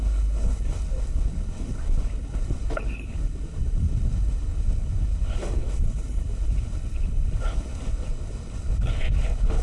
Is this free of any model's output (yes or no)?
no